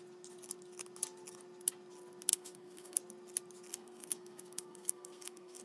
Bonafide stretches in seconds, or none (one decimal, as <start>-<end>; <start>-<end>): 0.0-2.3; 3.0-3.7